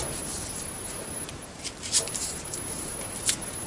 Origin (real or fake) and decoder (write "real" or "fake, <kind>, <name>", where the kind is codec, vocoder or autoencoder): fake, vocoder, BigVGAN v2